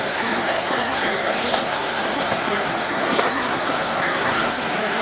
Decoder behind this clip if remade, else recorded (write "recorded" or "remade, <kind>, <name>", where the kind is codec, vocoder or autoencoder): remade, codec, SNAC